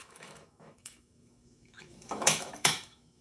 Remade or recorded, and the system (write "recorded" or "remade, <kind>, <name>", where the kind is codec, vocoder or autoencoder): remade, autoencoder, DAC-VAE